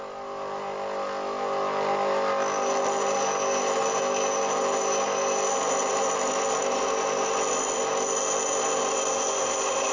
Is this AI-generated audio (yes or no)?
no